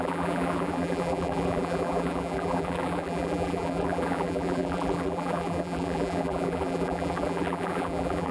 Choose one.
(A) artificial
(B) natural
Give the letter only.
A